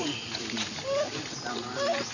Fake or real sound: fake